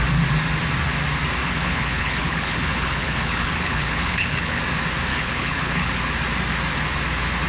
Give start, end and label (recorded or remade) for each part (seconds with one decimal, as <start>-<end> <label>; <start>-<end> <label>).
0.0-1.4 recorded; 1.4-4.6 remade; 4.6-5.1 recorded; 5.1-5.9 remade; 5.9-7.5 recorded